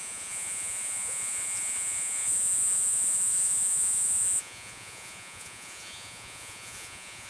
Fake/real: fake